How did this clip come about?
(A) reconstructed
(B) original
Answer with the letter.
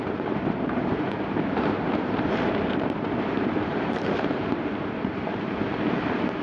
A